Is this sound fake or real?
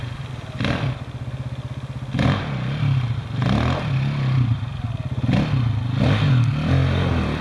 real